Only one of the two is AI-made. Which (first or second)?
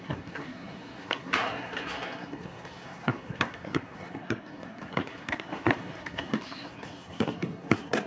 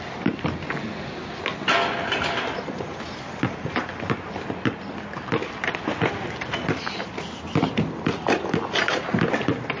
first